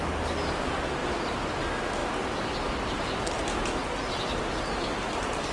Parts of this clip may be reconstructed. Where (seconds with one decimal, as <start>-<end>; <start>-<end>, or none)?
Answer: 1.0-1.6